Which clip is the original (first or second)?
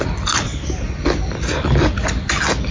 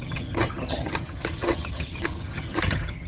first